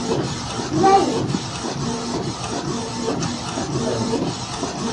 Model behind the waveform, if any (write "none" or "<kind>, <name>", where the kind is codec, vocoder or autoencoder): none